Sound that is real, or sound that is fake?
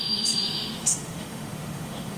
fake